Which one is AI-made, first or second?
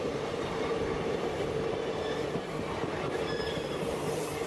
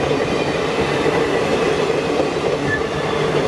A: first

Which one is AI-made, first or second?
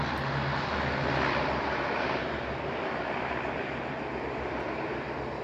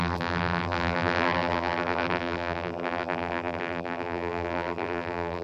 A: second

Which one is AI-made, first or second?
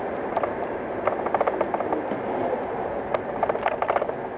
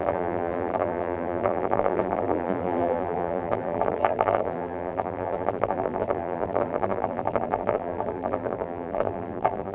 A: second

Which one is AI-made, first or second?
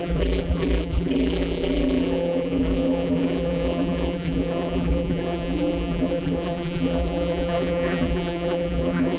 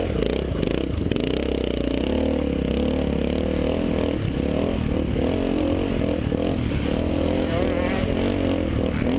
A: first